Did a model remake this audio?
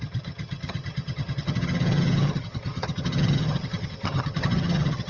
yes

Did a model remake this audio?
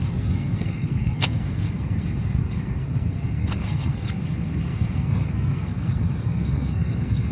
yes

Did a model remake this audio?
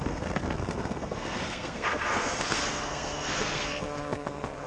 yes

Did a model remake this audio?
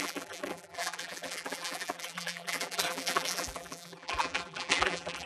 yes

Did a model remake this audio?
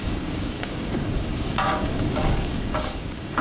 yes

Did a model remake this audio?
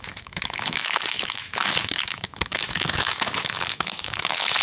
yes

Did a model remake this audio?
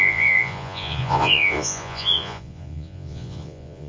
yes